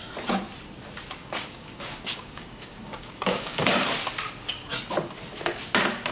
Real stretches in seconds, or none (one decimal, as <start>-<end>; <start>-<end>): 0.0-1.2; 3.8-6.1

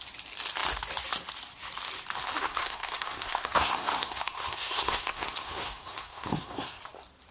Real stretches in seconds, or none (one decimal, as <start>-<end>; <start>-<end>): 0.0-2.4; 6.8-7.3

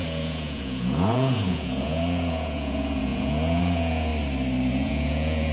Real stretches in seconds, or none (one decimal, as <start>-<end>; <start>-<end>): 4.1-4.7

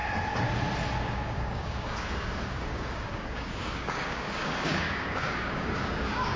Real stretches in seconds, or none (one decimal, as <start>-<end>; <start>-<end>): 0.0-1.0

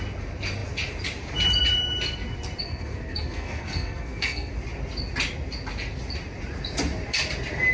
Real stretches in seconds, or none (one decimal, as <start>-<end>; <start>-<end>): 0.0-2.6; 4.5-7.7